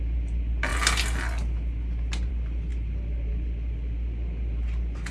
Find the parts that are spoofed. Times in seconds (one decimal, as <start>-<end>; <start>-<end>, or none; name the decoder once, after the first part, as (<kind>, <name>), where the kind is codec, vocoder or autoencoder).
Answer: none

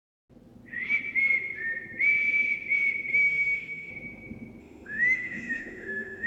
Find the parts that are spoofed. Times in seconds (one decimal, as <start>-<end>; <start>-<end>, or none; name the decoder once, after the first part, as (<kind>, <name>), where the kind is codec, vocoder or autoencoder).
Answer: 3.1-3.9 (autoencoder, DAC-VAE); 4.6-6.3